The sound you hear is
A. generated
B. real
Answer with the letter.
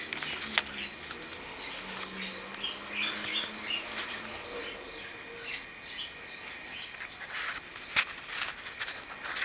B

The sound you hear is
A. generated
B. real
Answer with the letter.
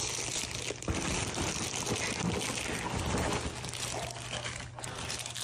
B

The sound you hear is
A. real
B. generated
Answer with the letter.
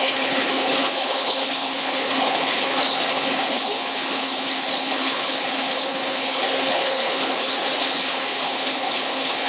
B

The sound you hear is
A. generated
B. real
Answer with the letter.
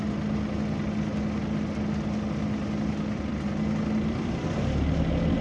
B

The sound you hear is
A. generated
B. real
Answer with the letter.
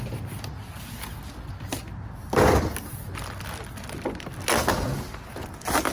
B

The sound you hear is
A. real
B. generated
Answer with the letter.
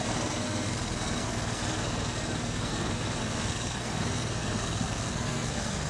B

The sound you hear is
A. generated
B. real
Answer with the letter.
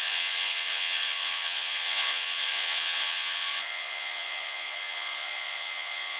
A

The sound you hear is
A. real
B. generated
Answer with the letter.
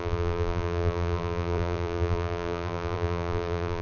B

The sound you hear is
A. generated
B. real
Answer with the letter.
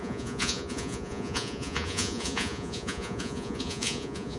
A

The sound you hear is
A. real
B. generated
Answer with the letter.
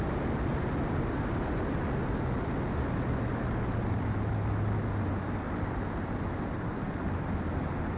A